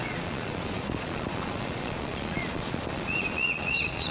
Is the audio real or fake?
fake